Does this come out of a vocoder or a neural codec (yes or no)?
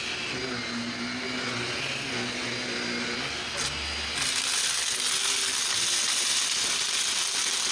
no